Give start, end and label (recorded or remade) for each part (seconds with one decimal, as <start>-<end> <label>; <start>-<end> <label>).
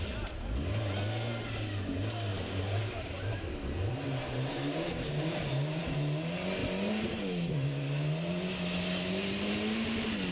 0.0-2.3 recorded; 2.3-5.8 remade; 5.8-6.6 recorded; 6.6-7.1 remade; 7.1-10.3 recorded